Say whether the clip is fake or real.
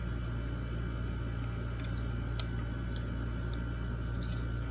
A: real